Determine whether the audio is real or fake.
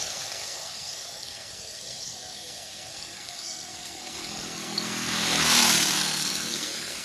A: fake